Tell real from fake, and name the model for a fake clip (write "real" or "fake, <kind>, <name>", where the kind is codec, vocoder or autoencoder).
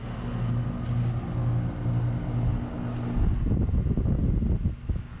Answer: real